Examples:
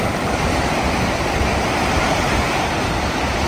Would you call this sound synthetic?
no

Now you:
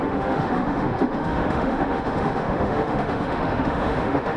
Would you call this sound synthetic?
yes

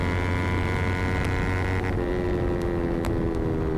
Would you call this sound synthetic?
no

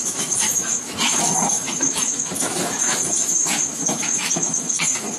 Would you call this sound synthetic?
yes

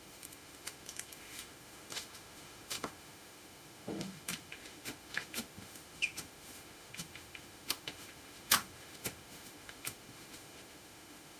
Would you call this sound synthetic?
yes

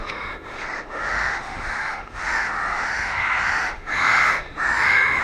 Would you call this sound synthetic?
yes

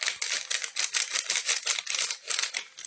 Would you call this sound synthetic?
no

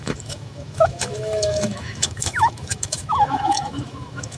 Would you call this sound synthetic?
yes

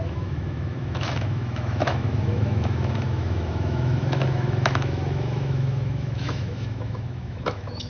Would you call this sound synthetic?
yes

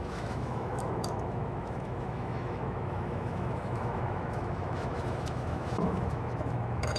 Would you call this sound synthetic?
yes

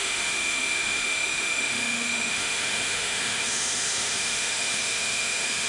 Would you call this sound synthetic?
yes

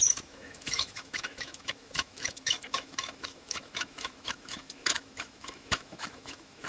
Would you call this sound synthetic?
yes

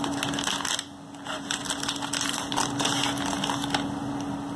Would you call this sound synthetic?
no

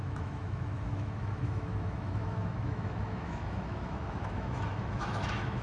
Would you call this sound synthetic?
yes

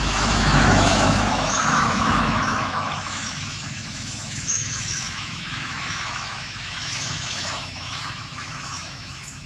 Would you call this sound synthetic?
yes